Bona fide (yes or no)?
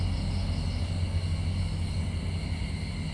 yes